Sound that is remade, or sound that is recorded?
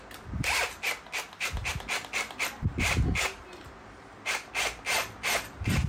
recorded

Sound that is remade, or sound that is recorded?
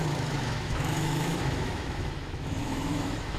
remade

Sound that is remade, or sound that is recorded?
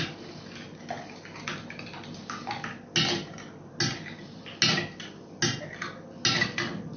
recorded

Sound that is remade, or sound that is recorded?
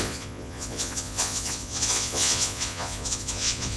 remade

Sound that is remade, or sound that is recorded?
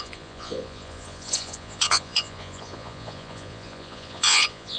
remade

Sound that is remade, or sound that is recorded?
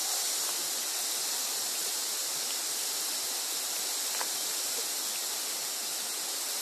recorded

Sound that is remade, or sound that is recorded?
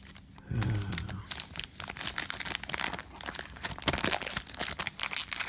recorded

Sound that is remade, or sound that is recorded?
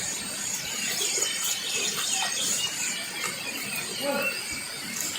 recorded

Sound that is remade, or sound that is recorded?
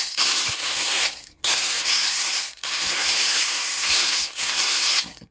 remade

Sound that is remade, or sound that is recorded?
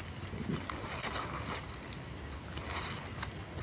recorded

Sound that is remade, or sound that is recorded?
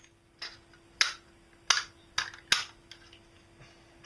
recorded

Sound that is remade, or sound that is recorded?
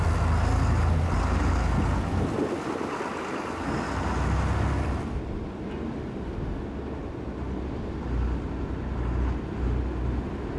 recorded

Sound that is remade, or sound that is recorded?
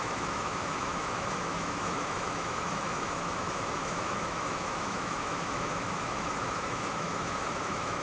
remade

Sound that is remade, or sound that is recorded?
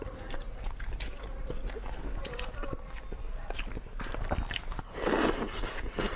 remade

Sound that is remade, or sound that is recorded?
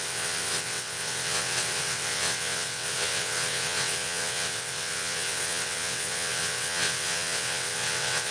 remade